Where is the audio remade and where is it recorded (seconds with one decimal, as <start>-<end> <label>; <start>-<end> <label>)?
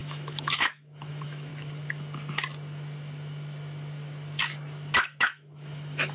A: 0.0-1.5 remade; 1.5-5.2 recorded; 5.2-6.1 remade